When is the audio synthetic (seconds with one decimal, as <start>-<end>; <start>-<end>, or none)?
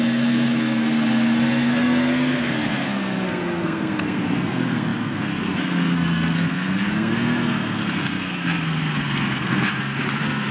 0.0-10.5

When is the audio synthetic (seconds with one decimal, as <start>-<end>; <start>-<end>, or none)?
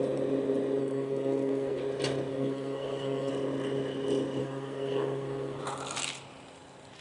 0.8-1.8; 2.3-3.3; 4.4-5.6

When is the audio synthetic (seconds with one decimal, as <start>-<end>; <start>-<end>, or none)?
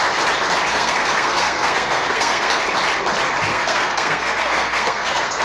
0.7-2.6; 3.5-5.4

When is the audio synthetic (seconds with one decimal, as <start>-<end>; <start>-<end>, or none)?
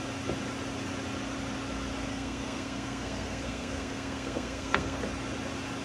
2.1-5.0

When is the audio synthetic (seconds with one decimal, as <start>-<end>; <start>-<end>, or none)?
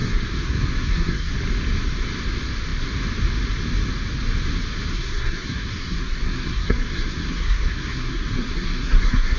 0.0-1.3; 4.9-9.4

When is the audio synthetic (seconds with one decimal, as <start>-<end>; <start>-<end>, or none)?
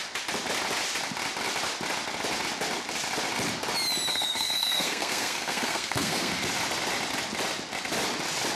4.1-6.3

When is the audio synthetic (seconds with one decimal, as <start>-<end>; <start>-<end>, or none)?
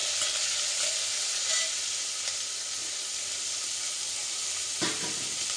none